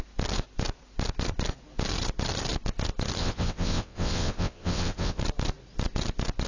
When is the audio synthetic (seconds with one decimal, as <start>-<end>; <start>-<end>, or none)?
3.2-5.2